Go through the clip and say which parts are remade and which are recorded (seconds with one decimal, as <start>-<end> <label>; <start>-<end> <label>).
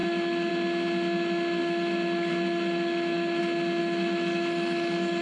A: 0.0-0.5 remade; 0.5-1.6 recorded; 1.6-3.4 remade; 3.4-3.8 recorded; 3.8-5.2 remade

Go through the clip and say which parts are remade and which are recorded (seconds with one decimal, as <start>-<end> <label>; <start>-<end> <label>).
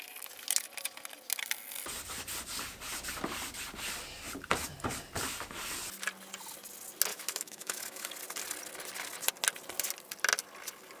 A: 0.0-7.1 recorded; 7.1-8.1 remade; 8.1-11.0 recorded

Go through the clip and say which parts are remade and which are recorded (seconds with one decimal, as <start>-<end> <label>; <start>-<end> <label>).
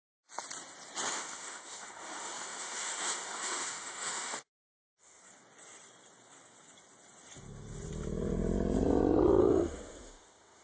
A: 0.0-1.1 recorded; 1.1-5.2 remade; 5.2-9.4 recorded; 9.4-10.6 remade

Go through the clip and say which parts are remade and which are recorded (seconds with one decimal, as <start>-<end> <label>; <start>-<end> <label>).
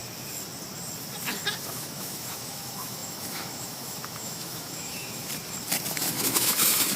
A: 0.0-1.7 recorded; 1.7-5.3 remade; 5.3-5.9 recorded; 5.9-7.0 remade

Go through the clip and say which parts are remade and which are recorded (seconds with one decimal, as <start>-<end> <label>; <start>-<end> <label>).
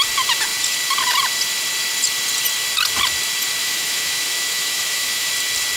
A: 0.0-3.6 recorded; 3.6-5.3 remade; 5.3-5.8 recorded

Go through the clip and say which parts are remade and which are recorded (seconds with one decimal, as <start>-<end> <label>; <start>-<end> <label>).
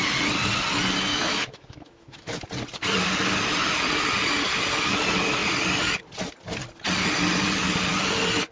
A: 0.0-1.1 recorded; 1.1-2.4 remade; 2.4-8.5 recorded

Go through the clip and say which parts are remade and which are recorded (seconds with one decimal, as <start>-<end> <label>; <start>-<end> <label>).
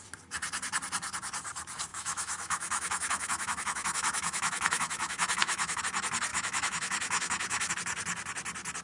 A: 0.0-1.9 recorded; 1.9-5.8 remade; 5.8-6.3 recorded; 6.3-7.7 remade; 7.7-8.8 recorded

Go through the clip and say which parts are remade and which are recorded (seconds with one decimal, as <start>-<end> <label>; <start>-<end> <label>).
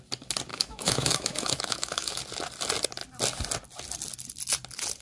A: 0.0-0.5 recorded; 0.5-2.2 remade; 2.2-5.0 recorded